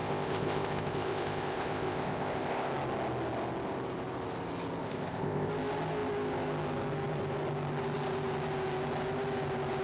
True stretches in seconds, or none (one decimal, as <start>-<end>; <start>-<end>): 2.7-4.8; 5.5-9.8